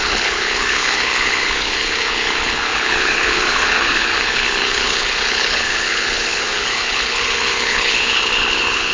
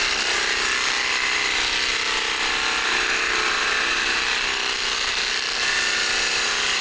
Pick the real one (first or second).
second